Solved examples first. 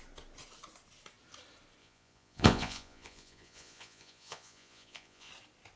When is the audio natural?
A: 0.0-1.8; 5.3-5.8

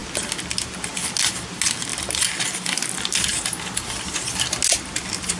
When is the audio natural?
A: 0.0-5.4

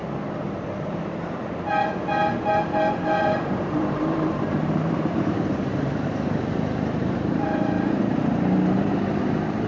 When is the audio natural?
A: 0.0-3.2

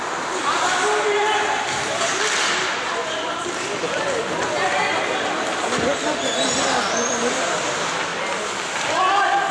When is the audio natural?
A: 8.1-8.8

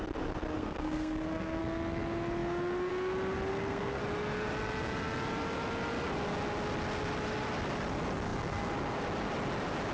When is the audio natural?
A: 0.0-0.6; 1.6-3.5; 4.0-9.9